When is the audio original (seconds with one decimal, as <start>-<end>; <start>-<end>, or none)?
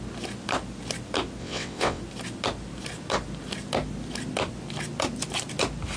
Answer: 0.0-1.4; 2.0-6.0